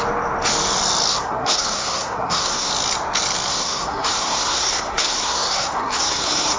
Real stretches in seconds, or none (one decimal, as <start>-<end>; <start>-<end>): 0.0-1.1; 2.7-3.5